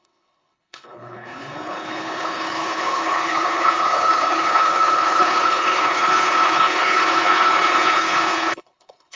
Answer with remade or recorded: remade